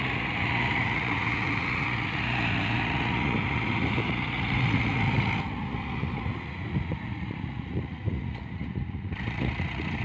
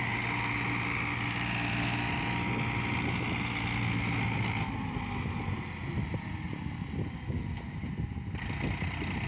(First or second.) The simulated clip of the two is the first